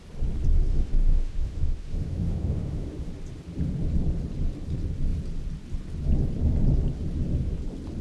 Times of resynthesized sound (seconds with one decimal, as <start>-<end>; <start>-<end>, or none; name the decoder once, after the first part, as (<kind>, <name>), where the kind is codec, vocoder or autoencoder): 0.7-3.1 (autoencoder, DAC-VAE)